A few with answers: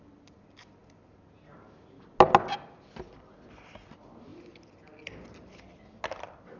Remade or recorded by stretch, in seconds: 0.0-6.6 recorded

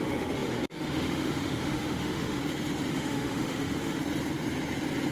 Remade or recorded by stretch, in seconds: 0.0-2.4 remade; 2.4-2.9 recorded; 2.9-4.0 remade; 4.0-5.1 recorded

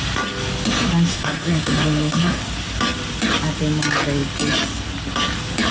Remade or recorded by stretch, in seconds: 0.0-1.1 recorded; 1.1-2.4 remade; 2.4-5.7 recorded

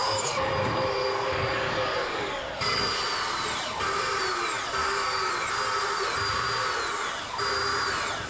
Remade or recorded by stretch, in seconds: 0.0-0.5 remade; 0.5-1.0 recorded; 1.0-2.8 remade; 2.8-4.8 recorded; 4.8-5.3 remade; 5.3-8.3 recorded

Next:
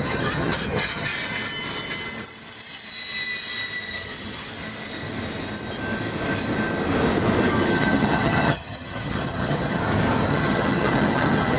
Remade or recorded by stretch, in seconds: 0.0-1.1 remade; 1.1-3.9 recorded; 3.9-4.5 remade; 4.5-7.7 recorded; 7.7-9.8 remade; 9.8-10.3 recorded; 10.3-11.6 remade

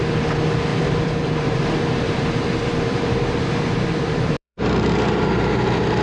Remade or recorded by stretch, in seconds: 0.0-0.7 recorded; 0.7-2.2 remade; 2.2-2.7 recorded; 2.7-4.9 remade; 4.9-6.0 recorded

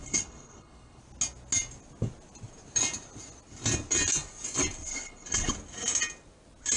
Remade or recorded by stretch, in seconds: 0.0-1.0 remade; 1.0-4.9 recorded; 4.9-5.5 remade; 5.5-6.8 recorded

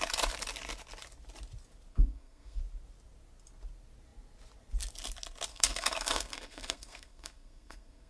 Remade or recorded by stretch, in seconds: 0.0-1.9 recorded; 1.9-2.6 remade; 2.6-5.5 recorded; 5.5-8.1 remade